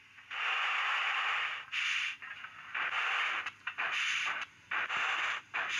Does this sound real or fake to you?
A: fake